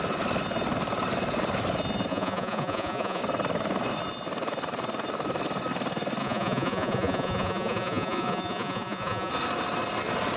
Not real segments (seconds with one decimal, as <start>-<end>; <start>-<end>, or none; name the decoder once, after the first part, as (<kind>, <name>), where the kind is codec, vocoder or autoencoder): 2.1-3.2 (vocoder, Vocos); 6.2-9.3